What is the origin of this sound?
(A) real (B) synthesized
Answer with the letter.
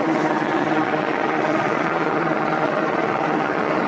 B